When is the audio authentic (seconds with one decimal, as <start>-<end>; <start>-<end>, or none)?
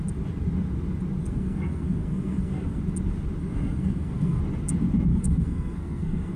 0.0-1.2; 2.8-3.4; 4.4-5.1